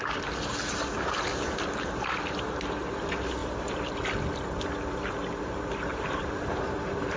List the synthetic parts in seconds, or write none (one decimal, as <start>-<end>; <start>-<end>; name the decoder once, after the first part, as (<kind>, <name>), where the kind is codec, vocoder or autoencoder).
3.4-4.0 (vocoder, BigVGAN v2); 5.9-7.2